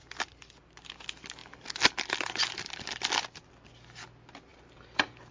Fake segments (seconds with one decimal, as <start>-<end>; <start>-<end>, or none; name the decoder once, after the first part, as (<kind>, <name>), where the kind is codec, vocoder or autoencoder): 4.5-5.3 (vocoder, BigVGAN v2)